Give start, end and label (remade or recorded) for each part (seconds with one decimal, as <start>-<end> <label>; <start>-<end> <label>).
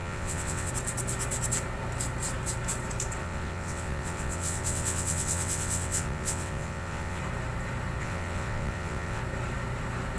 0.0-0.7 remade; 0.7-3.2 recorded; 3.2-7.2 remade; 7.2-8.0 recorded; 8.0-9.2 remade; 9.2-10.2 recorded